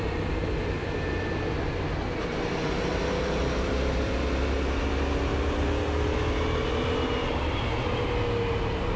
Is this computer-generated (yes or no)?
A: no